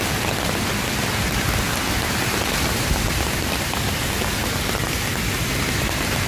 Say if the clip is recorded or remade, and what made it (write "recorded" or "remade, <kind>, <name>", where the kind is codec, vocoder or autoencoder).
recorded